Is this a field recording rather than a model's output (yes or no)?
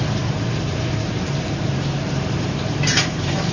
no